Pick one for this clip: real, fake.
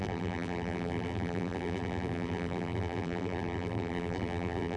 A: fake